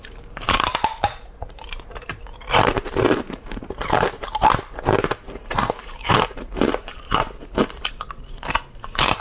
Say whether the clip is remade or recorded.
remade